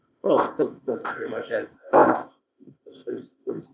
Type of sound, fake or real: fake